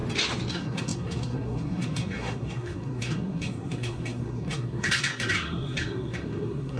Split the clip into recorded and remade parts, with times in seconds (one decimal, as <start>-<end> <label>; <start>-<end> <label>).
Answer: 0.0-0.5 recorded; 0.5-6.8 remade